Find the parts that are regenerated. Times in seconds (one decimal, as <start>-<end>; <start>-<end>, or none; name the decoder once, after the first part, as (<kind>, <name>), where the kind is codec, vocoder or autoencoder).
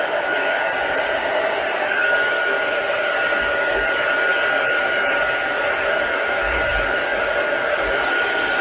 0.0-0.7 (codec, DAC); 1.3-8.6